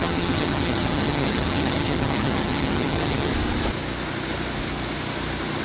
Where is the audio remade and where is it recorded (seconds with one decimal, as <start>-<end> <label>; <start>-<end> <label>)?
0.0-3.3 remade; 3.3-5.6 recorded